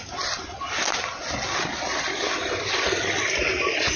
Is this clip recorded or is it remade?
recorded